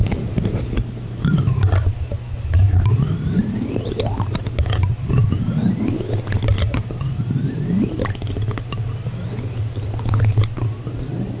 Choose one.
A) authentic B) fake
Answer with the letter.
A